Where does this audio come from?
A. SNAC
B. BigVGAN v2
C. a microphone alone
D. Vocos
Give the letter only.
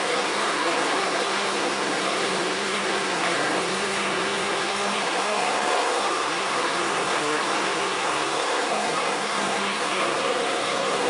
A